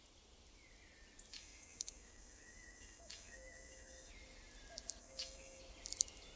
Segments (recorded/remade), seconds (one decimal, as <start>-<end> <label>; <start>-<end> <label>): 0.0-1.3 recorded; 1.3-4.1 remade; 4.1-5.0 recorded; 5.0-5.6 remade; 5.6-6.4 recorded